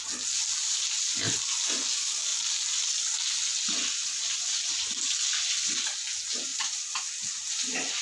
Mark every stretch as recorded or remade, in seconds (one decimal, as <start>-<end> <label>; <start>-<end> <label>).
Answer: 0.0-0.6 recorded; 0.6-1.9 remade; 1.9-2.3 recorded; 2.3-3.0 remade; 3.0-6.5 recorded; 6.5-7.0 remade; 7.0-8.0 recorded